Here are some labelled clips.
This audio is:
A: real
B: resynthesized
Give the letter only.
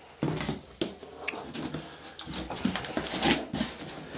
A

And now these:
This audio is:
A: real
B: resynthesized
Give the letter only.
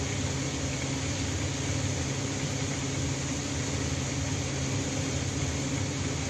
A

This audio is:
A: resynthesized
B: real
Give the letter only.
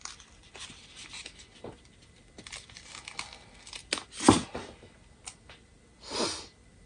B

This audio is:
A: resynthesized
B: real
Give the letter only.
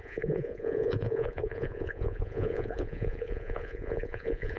A